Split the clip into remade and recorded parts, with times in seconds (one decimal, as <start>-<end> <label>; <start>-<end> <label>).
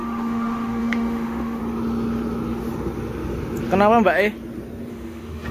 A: 0.0-1.6 remade; 1.6-4.9 recorded; 4.9-5.5 remade